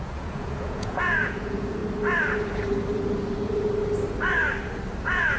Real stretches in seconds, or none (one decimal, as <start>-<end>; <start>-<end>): 1.8-5.0